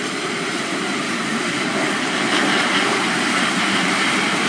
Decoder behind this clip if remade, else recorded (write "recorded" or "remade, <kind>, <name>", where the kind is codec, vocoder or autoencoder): remade, vocoder, BigVGAN v2